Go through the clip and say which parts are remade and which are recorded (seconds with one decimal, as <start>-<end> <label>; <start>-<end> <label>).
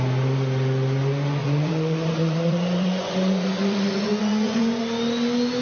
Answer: 0.0-1.4 recorded; 1.4-4.8 remade; 4.8-5.6 recorded